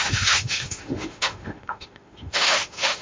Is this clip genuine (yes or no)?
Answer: no